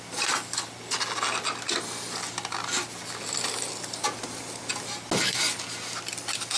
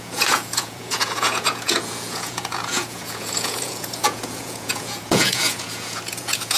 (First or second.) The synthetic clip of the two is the second